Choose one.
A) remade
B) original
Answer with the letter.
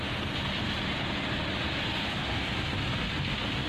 B